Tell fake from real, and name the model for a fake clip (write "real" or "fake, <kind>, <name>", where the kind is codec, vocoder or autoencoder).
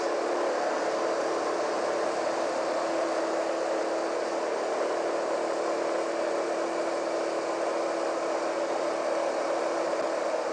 real